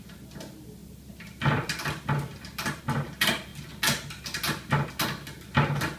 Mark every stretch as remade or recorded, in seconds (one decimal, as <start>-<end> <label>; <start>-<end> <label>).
0.0-6.0 recorded